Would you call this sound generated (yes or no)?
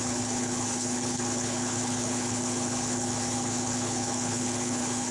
yes